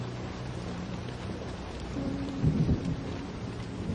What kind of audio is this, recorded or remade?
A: remade